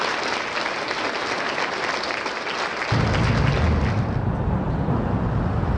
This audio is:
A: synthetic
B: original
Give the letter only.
B